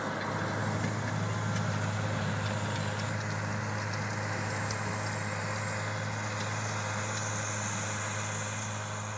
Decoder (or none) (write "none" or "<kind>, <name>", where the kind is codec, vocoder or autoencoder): none